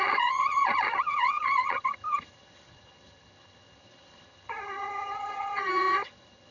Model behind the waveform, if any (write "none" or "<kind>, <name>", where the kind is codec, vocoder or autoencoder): vocoder, HiFi-GAN